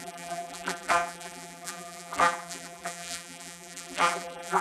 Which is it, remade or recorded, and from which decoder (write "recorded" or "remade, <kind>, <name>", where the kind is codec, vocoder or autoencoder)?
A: remade, vocoder, BigVGAN v2